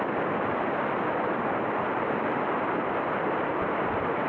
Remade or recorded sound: remade